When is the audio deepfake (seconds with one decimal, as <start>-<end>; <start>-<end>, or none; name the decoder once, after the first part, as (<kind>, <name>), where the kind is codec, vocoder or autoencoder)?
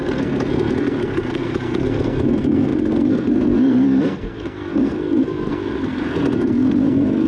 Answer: 0.0-7.3 (codec, SNAC)